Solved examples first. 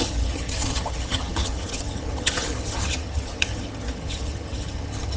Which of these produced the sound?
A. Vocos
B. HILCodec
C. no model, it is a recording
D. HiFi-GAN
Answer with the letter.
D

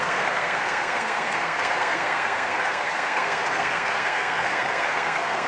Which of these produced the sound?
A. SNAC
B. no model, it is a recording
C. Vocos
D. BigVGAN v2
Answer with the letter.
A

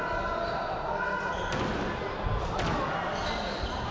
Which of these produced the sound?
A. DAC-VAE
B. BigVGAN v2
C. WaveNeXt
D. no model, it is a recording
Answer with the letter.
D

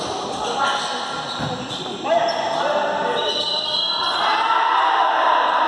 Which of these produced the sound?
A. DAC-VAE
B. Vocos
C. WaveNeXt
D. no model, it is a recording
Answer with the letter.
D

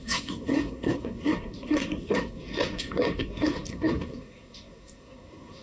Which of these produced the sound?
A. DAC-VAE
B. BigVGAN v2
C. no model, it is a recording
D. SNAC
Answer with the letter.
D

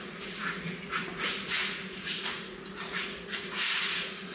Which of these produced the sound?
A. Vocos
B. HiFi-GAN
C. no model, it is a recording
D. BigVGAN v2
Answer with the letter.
A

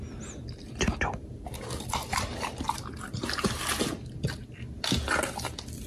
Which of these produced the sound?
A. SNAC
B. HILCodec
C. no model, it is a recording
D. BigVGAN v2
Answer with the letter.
C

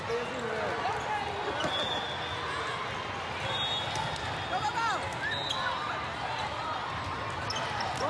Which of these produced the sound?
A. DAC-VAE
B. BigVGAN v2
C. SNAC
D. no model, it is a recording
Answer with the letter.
D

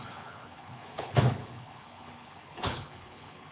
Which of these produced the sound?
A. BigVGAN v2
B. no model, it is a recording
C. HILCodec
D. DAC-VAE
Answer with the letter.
C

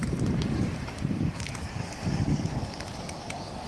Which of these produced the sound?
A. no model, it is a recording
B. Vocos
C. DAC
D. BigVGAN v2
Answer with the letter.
C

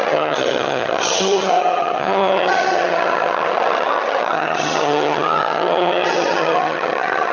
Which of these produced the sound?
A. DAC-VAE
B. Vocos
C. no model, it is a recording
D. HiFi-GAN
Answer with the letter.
D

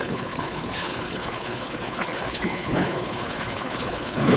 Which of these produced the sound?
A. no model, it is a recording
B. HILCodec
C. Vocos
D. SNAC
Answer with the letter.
B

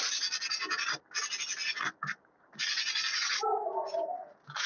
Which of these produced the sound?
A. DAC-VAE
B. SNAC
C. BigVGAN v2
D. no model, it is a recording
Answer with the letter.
D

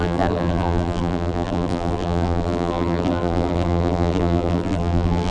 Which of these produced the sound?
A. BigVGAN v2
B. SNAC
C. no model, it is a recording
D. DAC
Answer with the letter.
A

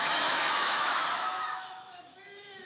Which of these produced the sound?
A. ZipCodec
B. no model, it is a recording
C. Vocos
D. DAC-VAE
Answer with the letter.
D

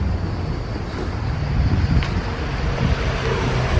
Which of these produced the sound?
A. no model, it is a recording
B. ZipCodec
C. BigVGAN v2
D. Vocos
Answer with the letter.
A